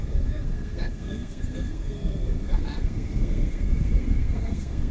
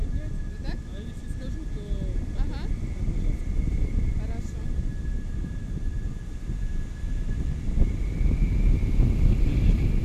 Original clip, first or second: second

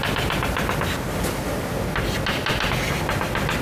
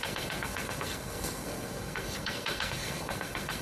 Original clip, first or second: first